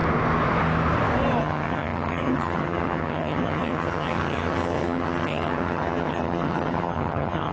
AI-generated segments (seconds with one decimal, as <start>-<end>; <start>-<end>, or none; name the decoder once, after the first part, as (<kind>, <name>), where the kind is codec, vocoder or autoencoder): 1.4-7.5 (vocoder, HiFi-GAN)